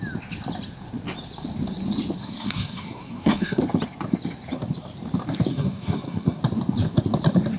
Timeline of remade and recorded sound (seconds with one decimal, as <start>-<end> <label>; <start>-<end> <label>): 0.0-2.2 recorded; 2.2-3.6 remade; 3.6-5.5 recorded; 5.5-6.4 remade; 6.4-7.6 recorded